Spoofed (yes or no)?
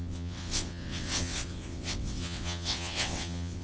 yes